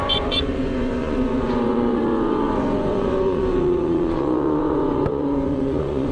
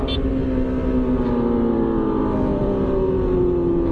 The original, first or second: second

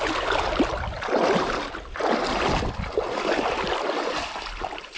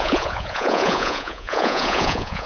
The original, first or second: first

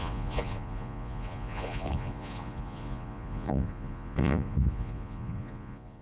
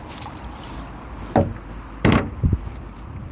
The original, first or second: second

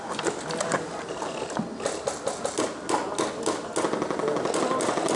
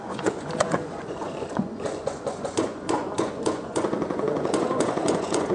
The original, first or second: first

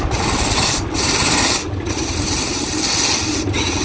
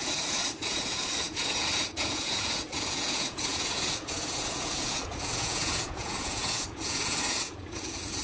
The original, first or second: first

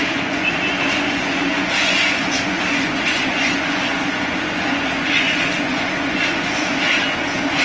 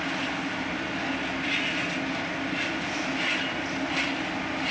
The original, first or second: second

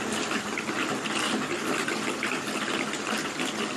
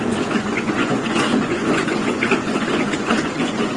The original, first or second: first